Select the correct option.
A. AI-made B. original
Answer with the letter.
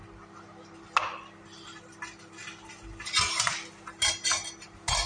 B